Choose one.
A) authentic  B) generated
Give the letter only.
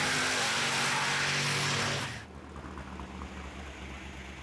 A